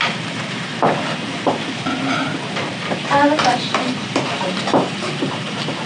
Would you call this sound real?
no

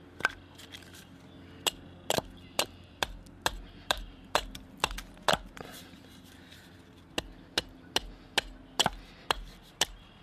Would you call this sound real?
yes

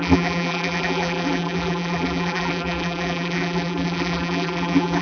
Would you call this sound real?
no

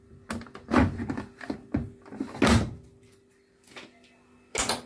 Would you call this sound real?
yes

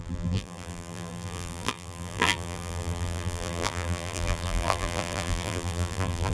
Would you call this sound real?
no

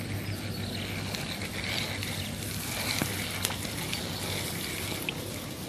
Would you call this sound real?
yes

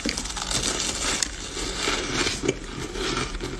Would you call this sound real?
yes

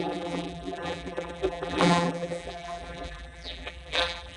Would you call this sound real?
no